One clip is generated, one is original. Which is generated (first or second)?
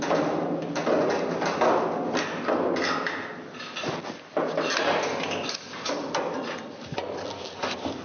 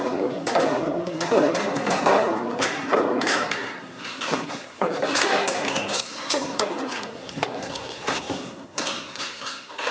second